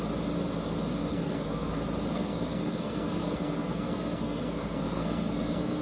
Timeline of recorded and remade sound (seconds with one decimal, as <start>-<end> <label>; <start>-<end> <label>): 0.0-1.1 recorded; 1.1-1.7 remade; 1.7-2.1 recorded; 2.1-5.8 remade